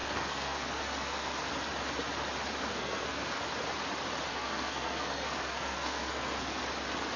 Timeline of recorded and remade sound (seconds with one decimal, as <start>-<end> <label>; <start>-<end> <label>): 0.0-1.5 remade; 1.5-2.7 recorded; 2.7-3.4 remade; 3.4-4.3 recorded; 4.3-6.6 remade; 6.6-7.2 recorded